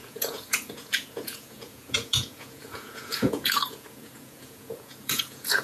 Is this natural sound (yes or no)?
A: no